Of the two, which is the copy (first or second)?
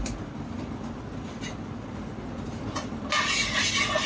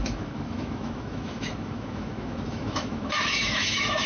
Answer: second